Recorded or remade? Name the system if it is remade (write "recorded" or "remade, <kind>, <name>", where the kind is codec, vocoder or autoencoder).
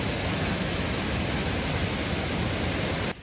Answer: recorded